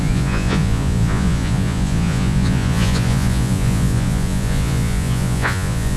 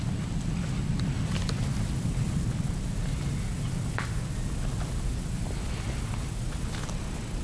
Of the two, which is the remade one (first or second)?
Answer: first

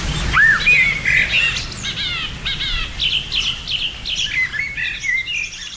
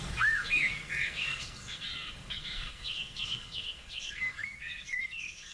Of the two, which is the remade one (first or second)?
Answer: second